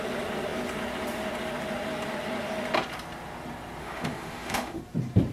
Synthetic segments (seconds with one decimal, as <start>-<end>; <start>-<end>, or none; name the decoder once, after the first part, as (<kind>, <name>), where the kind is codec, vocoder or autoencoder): 3.8-4.8 (autoencoder, DAC-VAE)

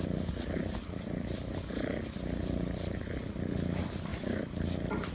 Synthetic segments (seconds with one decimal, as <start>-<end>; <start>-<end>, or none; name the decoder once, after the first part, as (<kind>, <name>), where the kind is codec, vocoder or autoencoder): none

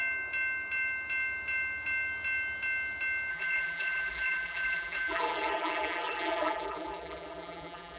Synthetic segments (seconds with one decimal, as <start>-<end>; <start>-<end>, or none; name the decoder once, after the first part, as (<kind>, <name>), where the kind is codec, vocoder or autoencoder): 3.3-8.0 (vocoder, BigVGAN v2)

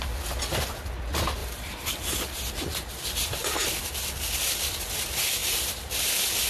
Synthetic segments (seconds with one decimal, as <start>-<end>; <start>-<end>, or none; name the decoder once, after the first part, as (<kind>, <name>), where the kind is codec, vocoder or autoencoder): 1.4-2.5 (vocoder, BigVGAN v2); 5.4-5.9